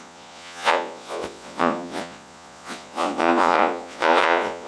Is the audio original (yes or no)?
no